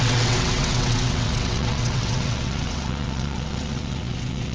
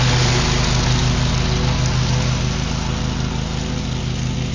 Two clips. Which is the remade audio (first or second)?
first